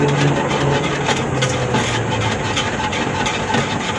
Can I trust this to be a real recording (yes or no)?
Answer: yes